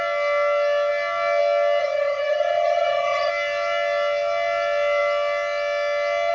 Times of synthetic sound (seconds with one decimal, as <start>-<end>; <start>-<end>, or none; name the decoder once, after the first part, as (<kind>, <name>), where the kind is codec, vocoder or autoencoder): 1.8-3.3 (vocoder, HiFi-GAN)